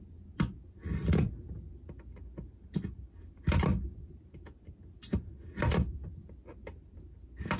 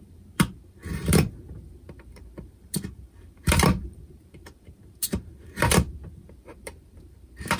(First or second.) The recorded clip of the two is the first